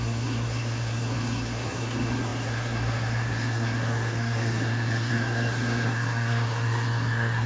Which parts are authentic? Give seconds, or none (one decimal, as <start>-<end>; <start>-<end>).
none